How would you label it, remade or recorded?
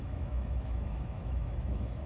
remade